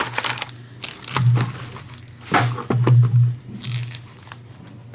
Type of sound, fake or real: real